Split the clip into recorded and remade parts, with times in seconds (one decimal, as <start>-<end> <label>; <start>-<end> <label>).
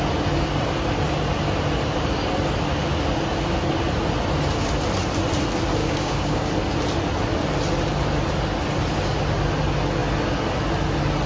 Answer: 0.0-5.8 recorded; 5.8-6.5 remade; 6.5-11.3 recorded